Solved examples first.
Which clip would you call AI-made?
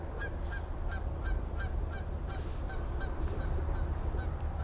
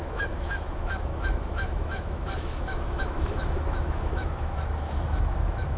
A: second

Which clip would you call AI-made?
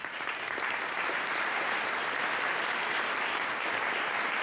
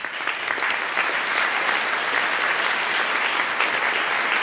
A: first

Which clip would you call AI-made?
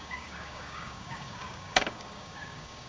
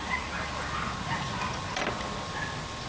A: first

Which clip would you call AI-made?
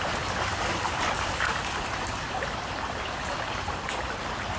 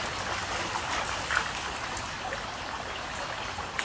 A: first